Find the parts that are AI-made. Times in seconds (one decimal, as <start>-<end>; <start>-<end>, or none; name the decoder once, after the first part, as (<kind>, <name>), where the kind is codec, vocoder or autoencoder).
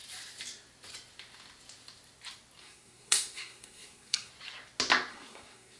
2.6-4.3 (codec, SNAC); 5.1-5.8